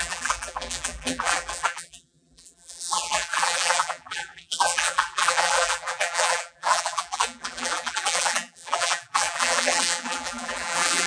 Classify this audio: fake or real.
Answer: fake